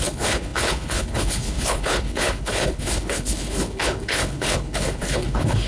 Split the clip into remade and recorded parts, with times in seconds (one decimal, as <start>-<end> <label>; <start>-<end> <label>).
0.0-5.7 remade